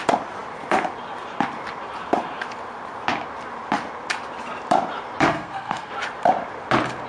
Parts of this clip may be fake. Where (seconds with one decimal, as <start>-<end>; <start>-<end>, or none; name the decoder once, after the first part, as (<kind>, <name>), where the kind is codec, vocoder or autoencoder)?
5.3-5.9 (codec, SNAC)